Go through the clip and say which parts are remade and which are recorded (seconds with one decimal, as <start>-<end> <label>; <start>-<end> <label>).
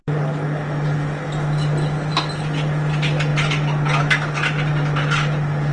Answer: 0.0-5.7 recorded